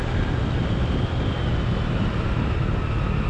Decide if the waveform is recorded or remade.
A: recorded